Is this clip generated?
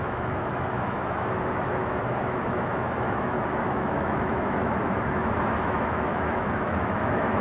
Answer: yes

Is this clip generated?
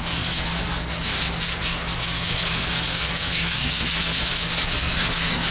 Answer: yes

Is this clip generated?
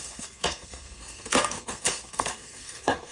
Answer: yes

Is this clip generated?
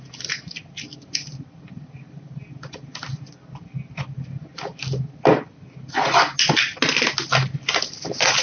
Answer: no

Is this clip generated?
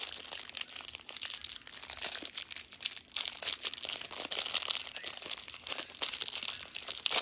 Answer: no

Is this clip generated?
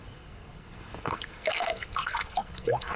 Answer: yes